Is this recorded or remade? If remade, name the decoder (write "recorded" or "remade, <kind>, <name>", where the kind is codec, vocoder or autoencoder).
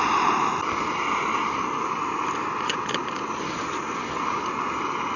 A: recorded